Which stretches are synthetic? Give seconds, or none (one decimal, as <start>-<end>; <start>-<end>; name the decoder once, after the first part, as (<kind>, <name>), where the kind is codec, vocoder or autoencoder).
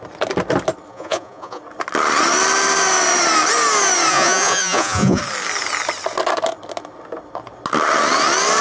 0.9-1.6 (vocoder, Vocos); 4.1-5.2